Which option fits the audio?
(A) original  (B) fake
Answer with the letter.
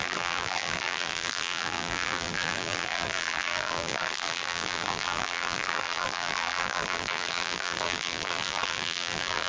B